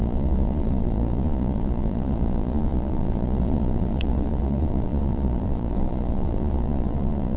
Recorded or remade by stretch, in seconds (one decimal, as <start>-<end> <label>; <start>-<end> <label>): 0.0-7.4 remade